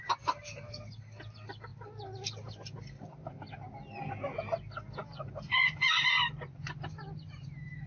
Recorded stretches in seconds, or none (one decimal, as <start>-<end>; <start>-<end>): 0.0-7.9